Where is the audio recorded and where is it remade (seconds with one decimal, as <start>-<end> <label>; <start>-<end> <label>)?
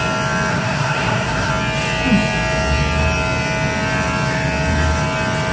0.0-0.5 recorded; 0.5-1.5 remade; 1.5-5.5 recorded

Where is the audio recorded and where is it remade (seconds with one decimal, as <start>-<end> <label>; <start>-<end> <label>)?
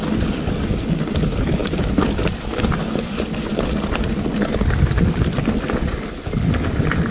0.0-1.6 recorded; 1.6-2.6 remade; 2.6-7.1 recorded